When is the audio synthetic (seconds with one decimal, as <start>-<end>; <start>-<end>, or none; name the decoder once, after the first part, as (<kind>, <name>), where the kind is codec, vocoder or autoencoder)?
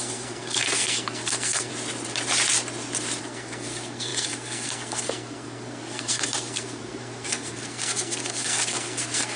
0.0-1.7 (codec, SNAC); 3.2-9.4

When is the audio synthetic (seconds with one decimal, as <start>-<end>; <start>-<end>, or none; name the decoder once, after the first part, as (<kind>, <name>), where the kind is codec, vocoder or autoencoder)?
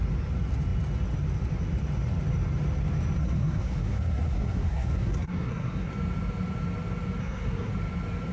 3.2-5.9 (codec, SNAC); 7.2-7.7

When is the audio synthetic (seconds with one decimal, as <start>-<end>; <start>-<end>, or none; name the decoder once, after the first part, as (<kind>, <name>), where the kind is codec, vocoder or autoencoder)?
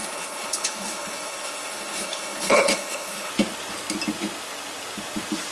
0.0-3.3 (codec, HILCodec)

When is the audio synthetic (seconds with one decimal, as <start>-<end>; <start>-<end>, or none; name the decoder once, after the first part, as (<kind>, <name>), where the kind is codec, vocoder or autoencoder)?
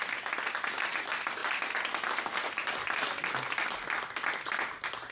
none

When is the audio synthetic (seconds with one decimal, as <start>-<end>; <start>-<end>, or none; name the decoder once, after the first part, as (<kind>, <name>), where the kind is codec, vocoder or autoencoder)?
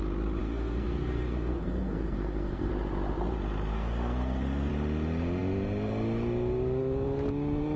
0.4-2.7 (codec, SNAC); 3.7-4.7